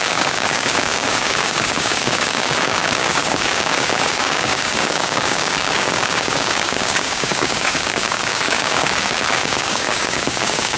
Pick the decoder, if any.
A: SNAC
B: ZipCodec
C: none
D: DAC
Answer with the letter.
D